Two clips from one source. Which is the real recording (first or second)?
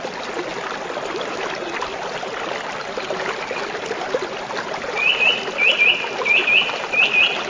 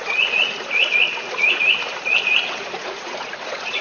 first